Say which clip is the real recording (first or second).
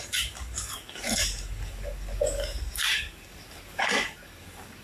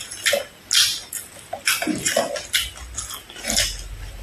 second